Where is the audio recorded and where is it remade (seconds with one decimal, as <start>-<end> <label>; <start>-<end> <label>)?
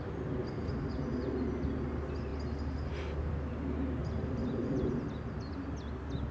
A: 0.0-4.0 recorded; 4.0-4.9 remade; 4.9-6.3 recorded